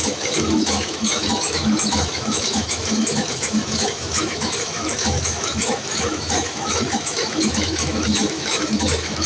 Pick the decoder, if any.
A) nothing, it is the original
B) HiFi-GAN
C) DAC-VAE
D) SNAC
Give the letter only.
C